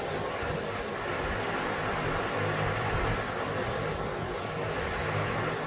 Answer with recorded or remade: recorded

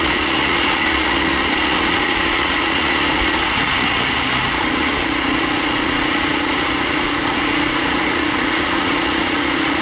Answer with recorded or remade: remade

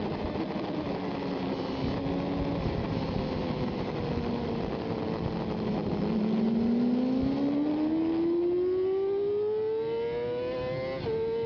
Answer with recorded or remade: recorded